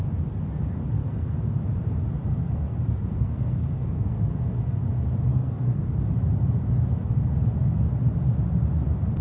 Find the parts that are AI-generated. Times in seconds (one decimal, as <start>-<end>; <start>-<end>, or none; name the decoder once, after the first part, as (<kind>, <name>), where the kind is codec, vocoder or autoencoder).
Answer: 1.0-1.6 (codec, SNAC); 2.4-4.3; 5.3-6.0